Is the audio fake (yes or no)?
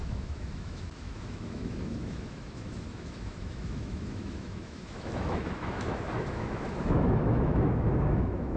yes